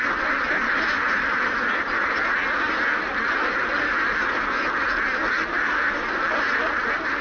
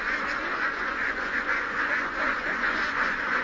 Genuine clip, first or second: first